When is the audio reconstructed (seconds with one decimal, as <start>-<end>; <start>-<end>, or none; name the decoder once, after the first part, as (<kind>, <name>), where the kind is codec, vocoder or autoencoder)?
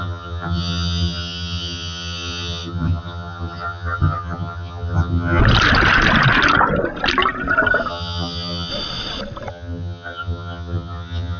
0.0-5.4 (vocoder, HiFi-GAN); 7.9-8.7; 9.5-11.4